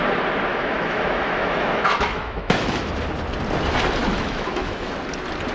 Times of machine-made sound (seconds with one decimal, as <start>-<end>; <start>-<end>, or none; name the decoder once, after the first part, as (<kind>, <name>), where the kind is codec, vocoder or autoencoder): 0.5-2.9 (autoencoder, DAC-VAE); 4.0-4.9